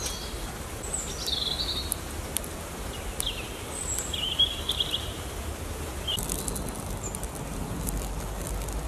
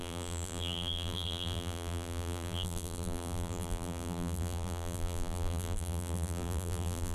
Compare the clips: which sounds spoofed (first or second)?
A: second